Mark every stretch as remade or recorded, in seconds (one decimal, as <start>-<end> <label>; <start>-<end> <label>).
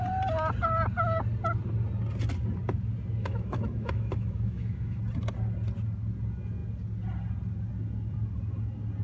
0.0-3.2 recorded; 3.2-5.0 remade; 5.0-9.0 recorded